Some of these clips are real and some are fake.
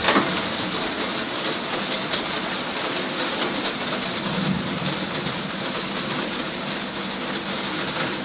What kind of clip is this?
real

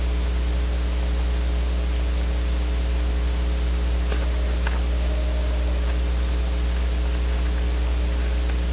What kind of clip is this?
real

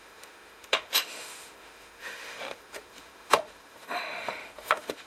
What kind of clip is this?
fake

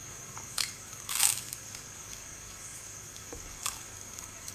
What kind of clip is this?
fake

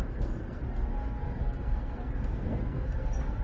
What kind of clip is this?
fake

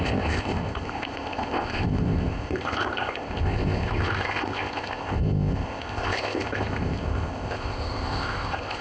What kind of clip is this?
fake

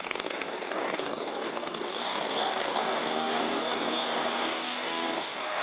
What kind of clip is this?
fake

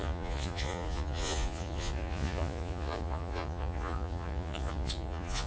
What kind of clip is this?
fake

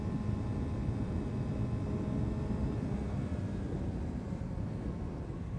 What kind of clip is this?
real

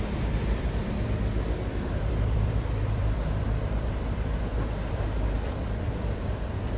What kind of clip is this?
fake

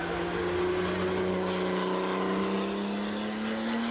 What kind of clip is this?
real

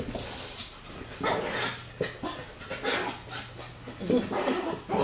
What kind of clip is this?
real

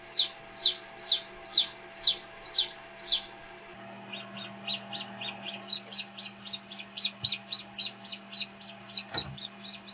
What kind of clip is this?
real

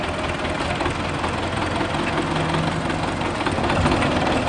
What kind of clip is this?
real